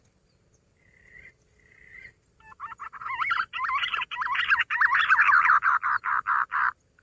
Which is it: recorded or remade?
recorded